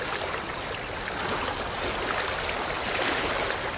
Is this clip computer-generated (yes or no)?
no